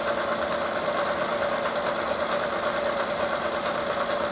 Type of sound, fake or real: real